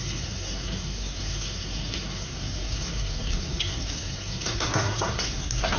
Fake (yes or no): yes